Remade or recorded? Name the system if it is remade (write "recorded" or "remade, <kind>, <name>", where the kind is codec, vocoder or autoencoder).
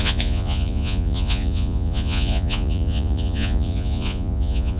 remade, vocoder, Vocos